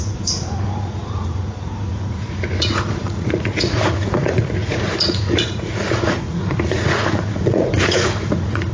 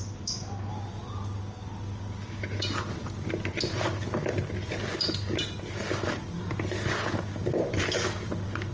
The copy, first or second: first